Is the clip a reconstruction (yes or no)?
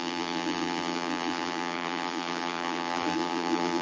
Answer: yes